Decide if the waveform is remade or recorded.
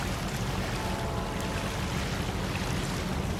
recorded